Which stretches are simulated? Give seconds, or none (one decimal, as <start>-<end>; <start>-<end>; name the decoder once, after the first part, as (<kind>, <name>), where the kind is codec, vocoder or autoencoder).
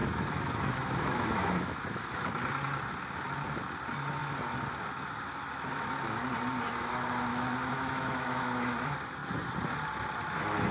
0.0-2.2 (autoencoder, DAC-VAE); 7.3-8.7